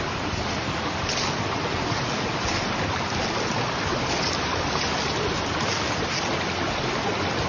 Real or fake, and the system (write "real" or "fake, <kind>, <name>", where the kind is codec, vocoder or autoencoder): real